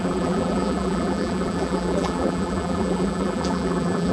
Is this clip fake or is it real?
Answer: fake